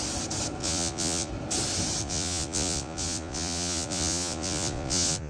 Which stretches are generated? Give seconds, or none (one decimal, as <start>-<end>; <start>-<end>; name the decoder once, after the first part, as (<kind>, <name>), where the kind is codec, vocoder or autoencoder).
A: 0.6-1.3 (vocoder, Vocos); 2.0-5.3